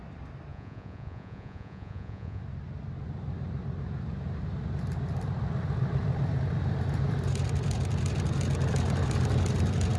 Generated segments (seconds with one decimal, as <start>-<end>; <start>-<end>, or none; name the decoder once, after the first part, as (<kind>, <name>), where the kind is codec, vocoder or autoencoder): 0.5-2.4 (vocoder, Vocos)